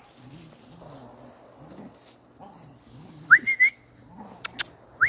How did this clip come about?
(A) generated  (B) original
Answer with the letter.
B